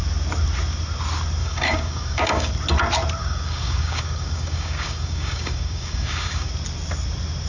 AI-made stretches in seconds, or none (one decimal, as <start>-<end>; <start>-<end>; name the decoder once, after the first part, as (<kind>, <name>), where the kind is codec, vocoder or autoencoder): 1.4-2.5 (codec, DAC); 3.2-6.5